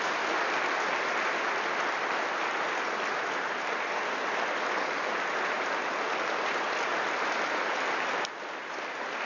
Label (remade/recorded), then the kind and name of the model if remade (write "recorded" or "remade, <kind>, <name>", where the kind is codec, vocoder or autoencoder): recorded